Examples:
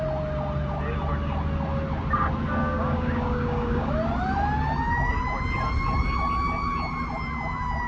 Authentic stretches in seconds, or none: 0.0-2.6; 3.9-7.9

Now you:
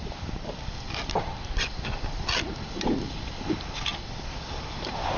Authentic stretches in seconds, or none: 0.0-5.2

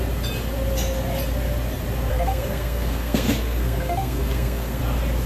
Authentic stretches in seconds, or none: 0.0-2.1; 4.8-5.3

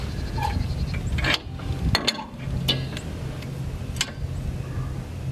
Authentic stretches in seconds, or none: 0.0-5.3

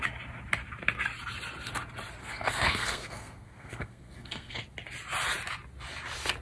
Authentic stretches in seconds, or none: 0.0-2.2; 4.6-6.4

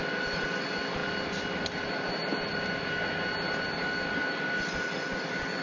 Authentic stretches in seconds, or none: 1.0-1.9; 2.5-4.2

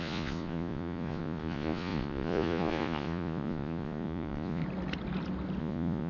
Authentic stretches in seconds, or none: 4.6-5.6

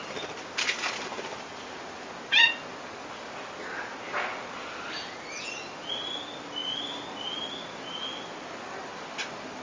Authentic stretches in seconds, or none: 0.0-9.6